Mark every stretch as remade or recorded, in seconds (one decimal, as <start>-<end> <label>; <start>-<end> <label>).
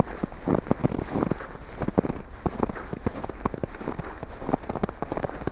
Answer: 0.0-0.8 recorded; 0.8-3.9 remade; 3.9-5.5 recorded